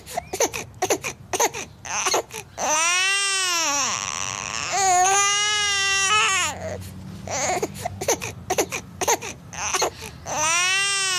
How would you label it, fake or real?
real